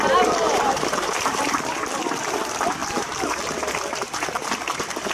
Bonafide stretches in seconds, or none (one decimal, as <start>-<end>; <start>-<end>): 0.0-0.5; 1.4-2.8; 4.5-5.1